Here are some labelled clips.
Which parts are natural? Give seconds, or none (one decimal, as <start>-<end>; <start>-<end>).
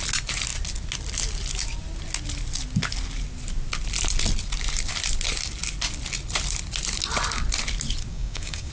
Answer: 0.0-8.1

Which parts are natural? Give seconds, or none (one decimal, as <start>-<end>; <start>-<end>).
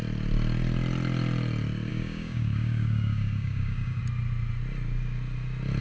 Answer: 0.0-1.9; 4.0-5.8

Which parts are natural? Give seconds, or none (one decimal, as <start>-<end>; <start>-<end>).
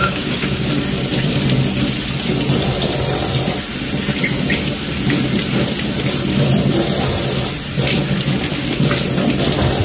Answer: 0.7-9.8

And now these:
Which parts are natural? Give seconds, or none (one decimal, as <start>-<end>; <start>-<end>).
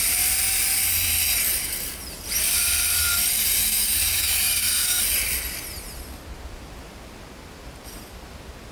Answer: 0.0-3.6; 5.0-8.7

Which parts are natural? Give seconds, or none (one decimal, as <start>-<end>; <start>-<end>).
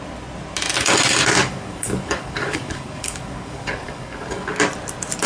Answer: 0.0-1.4; 4.6-5.3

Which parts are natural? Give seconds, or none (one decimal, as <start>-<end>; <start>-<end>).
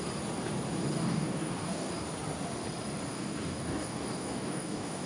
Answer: 0.0-1.0; 1.9-3.1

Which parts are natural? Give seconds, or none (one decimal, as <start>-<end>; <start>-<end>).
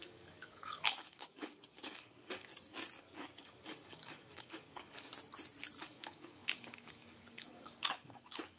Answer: 2.5-3.0; 5.1-5.8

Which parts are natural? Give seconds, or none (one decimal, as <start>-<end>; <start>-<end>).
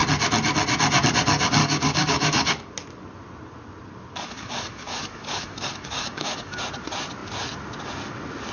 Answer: 0.0-1.6; 2.7-4.1; 6.6-8.5